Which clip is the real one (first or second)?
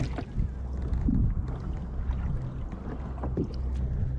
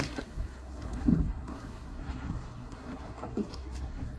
first